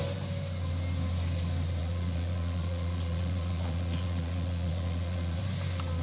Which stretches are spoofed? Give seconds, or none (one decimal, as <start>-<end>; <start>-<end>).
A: 1.8-5.4